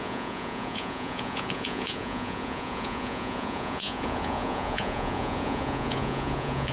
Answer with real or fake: fake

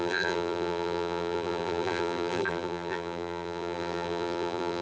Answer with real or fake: fake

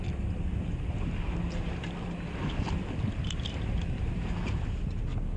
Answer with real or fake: real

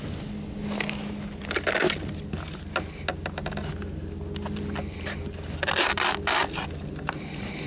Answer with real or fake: real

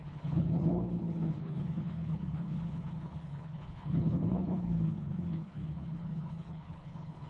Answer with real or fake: fake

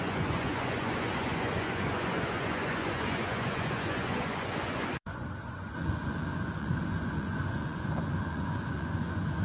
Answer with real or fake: fake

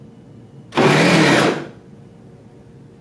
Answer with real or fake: real